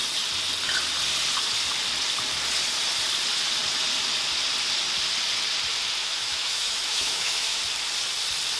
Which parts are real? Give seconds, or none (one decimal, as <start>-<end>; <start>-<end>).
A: 0.0-6.0; 7.6-8.6